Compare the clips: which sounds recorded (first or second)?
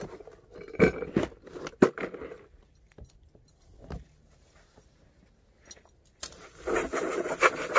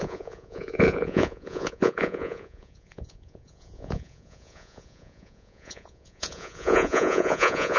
first